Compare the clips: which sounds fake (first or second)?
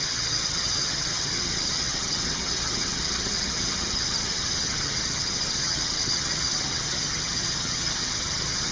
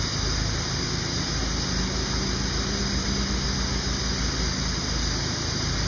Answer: first